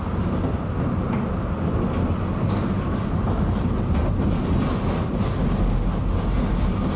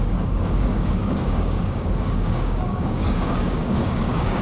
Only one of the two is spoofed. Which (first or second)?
second